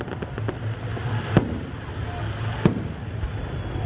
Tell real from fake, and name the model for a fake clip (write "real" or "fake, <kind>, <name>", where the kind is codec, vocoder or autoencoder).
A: real